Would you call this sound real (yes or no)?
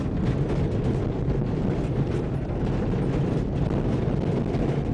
yes